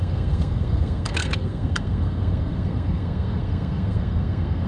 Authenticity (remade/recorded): remade